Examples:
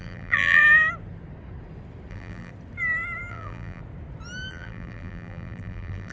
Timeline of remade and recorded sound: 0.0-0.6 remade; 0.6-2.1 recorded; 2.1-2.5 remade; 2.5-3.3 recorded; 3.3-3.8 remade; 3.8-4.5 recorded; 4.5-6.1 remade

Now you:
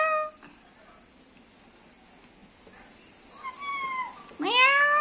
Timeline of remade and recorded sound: 0.0-5.0 recorded

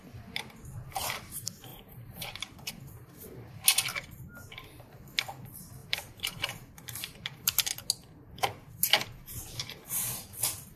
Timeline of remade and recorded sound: 0.0-1.7 recorded; 1.7-2.7 remade; 2.7-5.8 recorded; 5.8-7.5 remade; 7.5-10.8 recorded

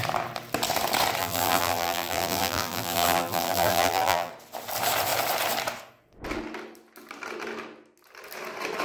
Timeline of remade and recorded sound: 0.0-1.2 recorded; 1.2-4.3 remade; 4.3-8.8 recorded